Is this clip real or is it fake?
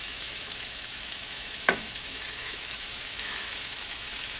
fake